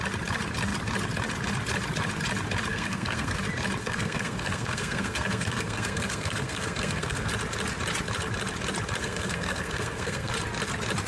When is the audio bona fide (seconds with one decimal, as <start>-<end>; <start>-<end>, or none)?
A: 0.0-2.7; 3.4-3.8; 7.3-9.0; 10.3-11.1